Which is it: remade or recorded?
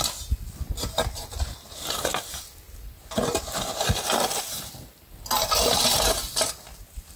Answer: recorded